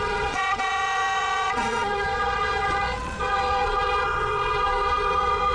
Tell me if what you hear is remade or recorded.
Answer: remade